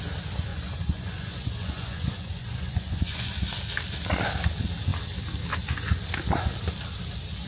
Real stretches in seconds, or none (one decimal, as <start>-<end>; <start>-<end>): 0.0-0.5; 3.3-7.5